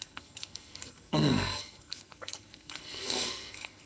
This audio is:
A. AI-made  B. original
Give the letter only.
A